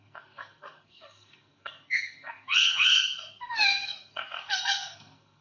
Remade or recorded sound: remade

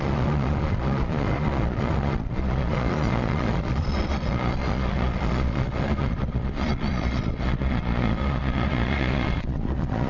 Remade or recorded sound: remade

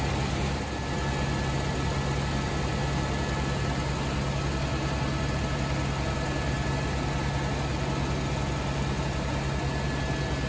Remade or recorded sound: recorded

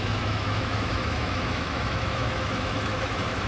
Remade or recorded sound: remade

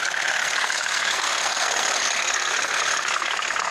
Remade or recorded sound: remade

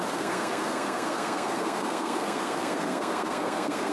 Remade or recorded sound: remade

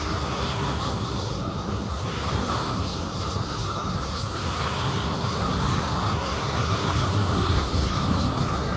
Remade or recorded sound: remade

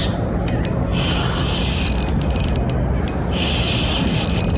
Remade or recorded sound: recorded